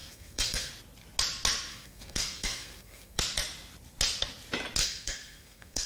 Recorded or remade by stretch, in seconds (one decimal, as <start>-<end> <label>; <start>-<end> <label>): 0.0-0.7 remade; 0.7-1.7 recorded; 1.7-3.2 remade; 3.2-4.8 recorded; 4.8-5.9 remade